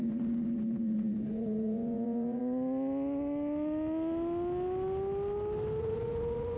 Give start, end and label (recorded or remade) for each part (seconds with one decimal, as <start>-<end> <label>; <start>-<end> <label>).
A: 0.0-2.4 remade; 2.4-5.8 recorded; 5.8-6.6 remade